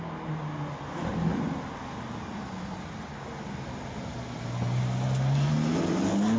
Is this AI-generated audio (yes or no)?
no